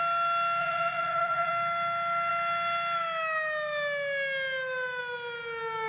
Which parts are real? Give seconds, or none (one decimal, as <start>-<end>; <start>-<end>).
0.0-0.6; 1.5-5.9